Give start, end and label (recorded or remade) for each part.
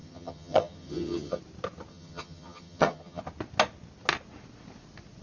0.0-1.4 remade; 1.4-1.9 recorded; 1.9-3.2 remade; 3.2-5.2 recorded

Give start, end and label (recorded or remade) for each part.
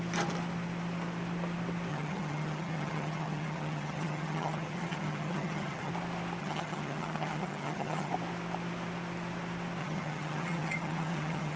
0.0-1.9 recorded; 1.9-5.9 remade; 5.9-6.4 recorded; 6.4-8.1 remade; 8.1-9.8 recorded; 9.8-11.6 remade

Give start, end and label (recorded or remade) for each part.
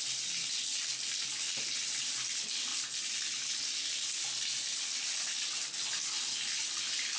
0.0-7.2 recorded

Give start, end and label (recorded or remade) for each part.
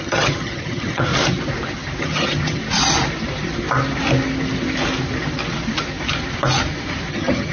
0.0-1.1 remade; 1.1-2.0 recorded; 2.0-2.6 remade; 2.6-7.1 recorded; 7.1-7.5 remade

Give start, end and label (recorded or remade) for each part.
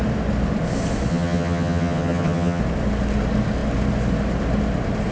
0.0-1.1 recorded; 1.1-2.6 remade; 2.6-5.1 recorded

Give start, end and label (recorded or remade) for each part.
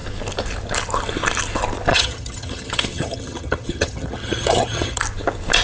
0.0-1.9 recorded; 1.9-5.0 remade; 5.0-5.6 recorded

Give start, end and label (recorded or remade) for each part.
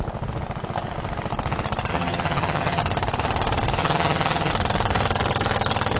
0.0-1.9 recorded; 1.9-2.8 remade; 2.8-3.8 recorded; 3.8-4.5 remade; 4.5-6.0 recorded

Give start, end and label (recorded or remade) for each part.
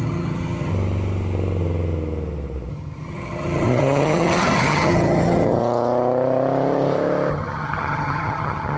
0.0-0.7 remade; 0.7-2.7 recorded; 2.7-5.6 remade; 5.6-7.3 recorded; 7.3-8.8 remade